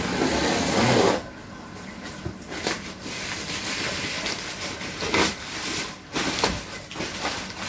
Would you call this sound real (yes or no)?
yes